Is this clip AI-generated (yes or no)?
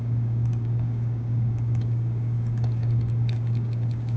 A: yes